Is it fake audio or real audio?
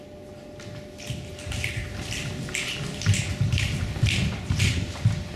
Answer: real